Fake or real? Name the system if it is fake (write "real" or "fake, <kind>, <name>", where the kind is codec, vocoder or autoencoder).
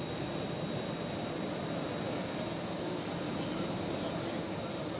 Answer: real